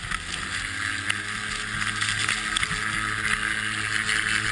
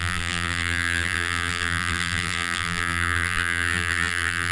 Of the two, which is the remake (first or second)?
second